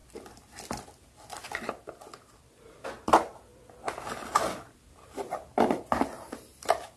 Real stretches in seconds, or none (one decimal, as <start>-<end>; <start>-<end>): 1.9-3.5; 6.3-7.0

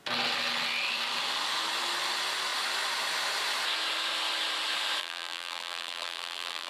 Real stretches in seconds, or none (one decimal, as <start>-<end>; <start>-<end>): 0.0-5.0

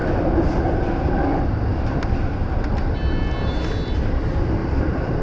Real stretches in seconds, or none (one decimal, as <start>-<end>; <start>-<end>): 0.0-4.6

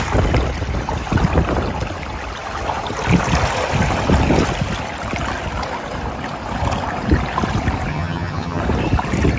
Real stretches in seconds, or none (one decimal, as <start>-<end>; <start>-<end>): 0.0-7.9; 8.6-9.4

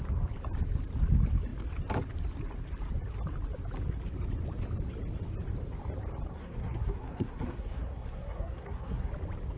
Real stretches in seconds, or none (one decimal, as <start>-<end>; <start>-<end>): 0.0-6.3; 9.1-9.6

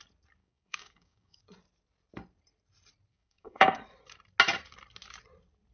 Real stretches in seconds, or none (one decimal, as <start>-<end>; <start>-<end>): 0.0-0.4; 1.4-3.1; 3.8-5.7